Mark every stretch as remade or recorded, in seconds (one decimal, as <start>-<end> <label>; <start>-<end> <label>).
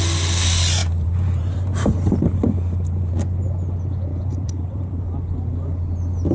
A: 0.0-0.8 recorded; 0.8-3.1 remade; 3.1-4.1 recorded; 4.1-4.9 remade; 4.9-6.3 recorded